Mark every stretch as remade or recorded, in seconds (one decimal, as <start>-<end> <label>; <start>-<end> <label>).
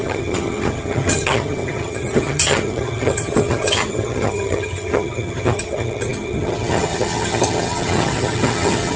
0.0-9.0 remade